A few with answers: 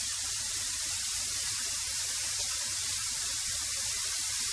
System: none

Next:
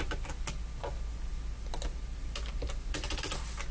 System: none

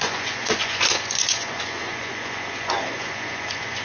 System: vocoder, Vocos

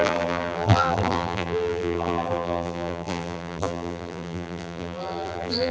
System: vocoder, BigVGAN v2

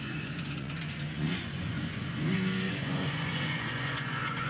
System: vocoder, Vocos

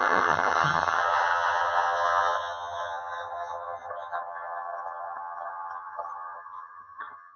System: vocoder, HiFi-GAN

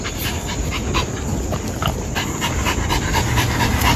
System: none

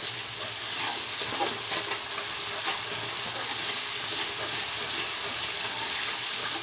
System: none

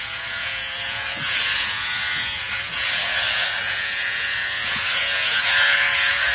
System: vocoder, Vocos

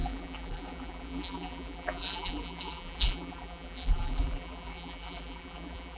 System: vocoder, BigVGAN v2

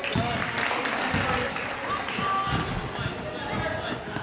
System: none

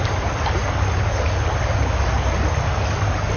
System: none